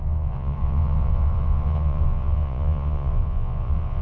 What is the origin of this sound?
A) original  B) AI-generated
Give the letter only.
B